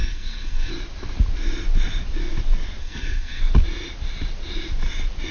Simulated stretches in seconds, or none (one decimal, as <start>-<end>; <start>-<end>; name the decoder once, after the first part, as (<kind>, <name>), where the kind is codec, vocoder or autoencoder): 0.0-0.7 (codec, SNAC); 2.8-3.4